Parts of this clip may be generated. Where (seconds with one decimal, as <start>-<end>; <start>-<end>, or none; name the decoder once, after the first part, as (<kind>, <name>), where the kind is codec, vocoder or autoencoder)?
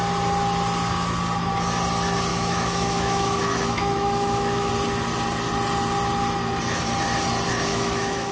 2.3-4.7 (autoencoder, DAC-VAE); 7.7-8.3